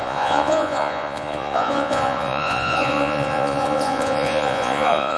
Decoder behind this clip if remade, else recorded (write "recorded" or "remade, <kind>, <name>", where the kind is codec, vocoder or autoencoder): remade, vocoder, Vocos